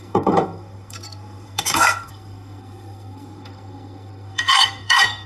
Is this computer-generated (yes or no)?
yes